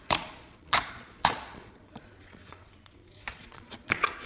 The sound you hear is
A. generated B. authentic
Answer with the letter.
A